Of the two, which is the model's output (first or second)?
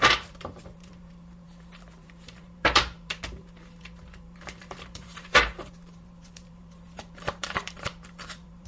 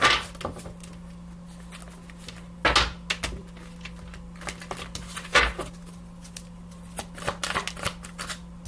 first